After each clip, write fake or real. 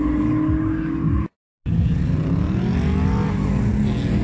real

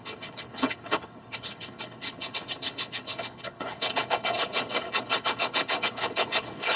fake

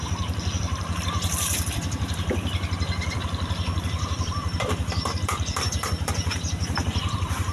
fake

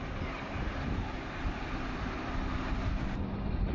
real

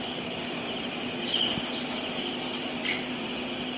real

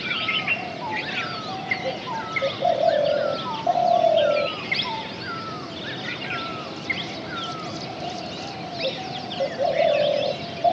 real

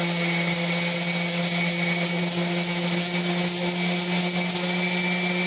real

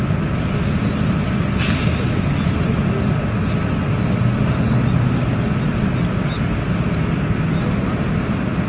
real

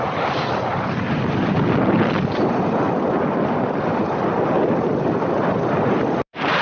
fake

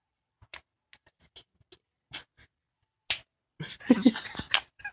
real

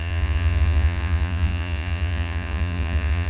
fake